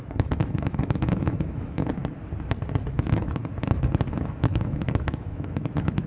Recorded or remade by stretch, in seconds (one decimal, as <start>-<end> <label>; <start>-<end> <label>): 0.0-2.0 remade; 2.0-2.9 recorded; 2.9-3.4 remade; 3.4-4.3 recorded; 4.3-6.1 remade